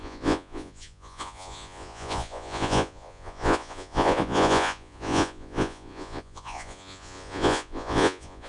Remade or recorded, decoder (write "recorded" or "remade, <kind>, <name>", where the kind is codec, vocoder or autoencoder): remade, vocoder, Vocos